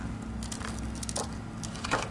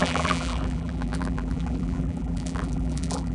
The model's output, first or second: second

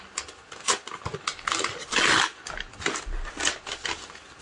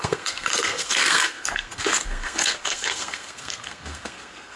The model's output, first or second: second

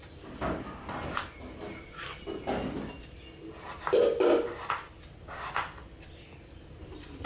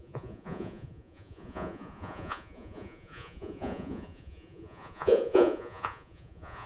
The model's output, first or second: second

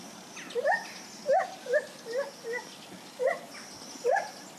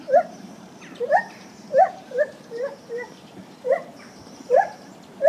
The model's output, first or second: second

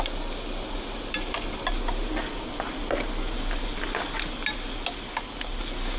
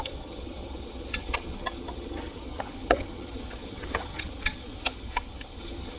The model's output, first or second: second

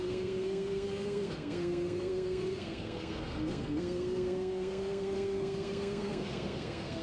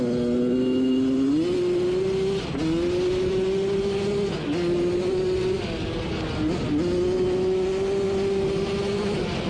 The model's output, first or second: first